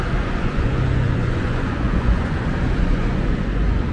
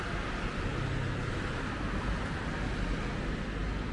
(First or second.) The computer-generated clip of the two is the first